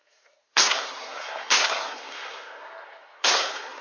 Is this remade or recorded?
remade